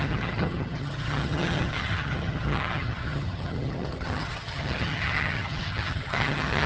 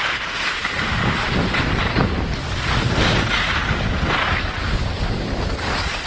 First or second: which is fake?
first